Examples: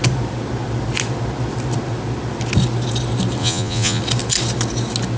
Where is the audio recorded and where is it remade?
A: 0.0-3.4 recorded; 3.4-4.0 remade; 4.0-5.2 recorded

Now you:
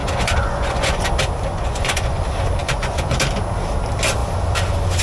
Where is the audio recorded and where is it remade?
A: 0.0-1.1 remade; 1.1-1.5 recorded; 1.5-2.2 remade; 2.2-2.6 recorded; 2.6-3.2 remade; 3.2-5.0 recorded

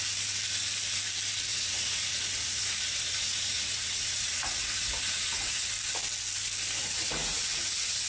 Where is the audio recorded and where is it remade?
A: 0.0-1.5 recorded; 1.5-5.7 remade; 5.7-6.8 recorded; 6.8-8.1 remade